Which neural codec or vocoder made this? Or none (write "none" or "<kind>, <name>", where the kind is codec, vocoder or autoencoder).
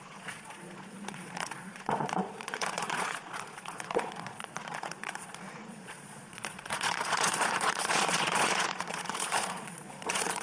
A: vocoder, Vocos